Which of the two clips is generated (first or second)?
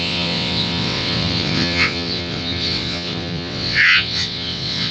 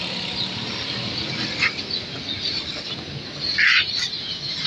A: first